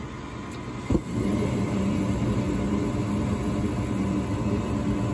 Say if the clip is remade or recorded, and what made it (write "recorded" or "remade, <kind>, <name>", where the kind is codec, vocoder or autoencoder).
recorded